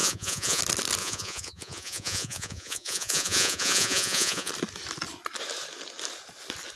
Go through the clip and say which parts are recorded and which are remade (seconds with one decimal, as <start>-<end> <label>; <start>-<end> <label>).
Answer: 0.0-0.6 remade; 0.6-1.0 recorded; 1.0-4.5 remade; 4.5-6.8 recorded